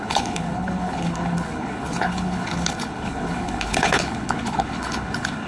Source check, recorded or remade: remade